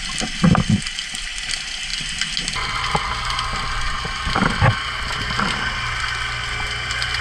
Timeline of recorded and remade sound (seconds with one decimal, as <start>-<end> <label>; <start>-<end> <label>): 0.0-7.2 recorded